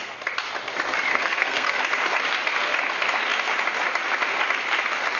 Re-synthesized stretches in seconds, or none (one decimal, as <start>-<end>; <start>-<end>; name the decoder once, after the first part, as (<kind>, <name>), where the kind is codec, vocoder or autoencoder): 1.1-1.8 (codec, SNAC)